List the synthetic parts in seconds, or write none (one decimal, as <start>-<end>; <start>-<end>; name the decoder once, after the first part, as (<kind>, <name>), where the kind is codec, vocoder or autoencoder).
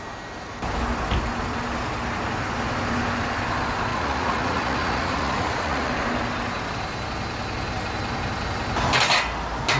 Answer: 3.9-5.9 (vocoder, Vocos)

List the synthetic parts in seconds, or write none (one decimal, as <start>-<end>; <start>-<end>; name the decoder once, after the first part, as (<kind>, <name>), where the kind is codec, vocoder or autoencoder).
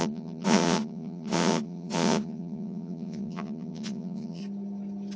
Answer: 0.0-4.4 (vocoder, Vocos)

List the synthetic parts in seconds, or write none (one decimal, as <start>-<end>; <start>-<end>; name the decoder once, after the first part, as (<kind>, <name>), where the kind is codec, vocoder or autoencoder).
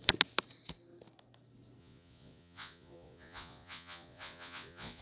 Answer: 1.8-5.0 (vocoder, Vocos)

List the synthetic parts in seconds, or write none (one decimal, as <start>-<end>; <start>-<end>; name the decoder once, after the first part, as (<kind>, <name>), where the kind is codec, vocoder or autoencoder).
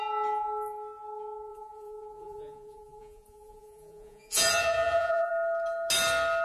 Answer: 1.5-5.3 (vocoder, Vocos)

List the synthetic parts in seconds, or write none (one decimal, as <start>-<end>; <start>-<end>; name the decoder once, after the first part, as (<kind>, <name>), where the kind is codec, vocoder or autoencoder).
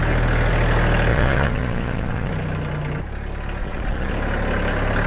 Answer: 1.1-2.3 (vocoder, Vocos); 3.6-4.1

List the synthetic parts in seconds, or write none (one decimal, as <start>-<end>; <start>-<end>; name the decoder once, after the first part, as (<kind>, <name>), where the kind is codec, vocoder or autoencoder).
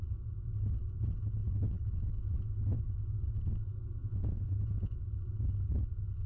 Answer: 4.0-5.0 (vocoder, Vocos)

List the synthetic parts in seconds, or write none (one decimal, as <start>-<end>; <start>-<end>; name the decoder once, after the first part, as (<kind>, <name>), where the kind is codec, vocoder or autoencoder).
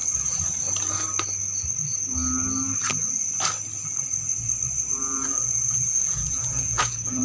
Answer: 4.9-7.2 (vocoder, Vocos)